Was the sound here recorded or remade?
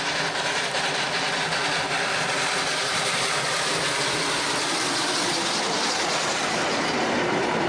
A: recorded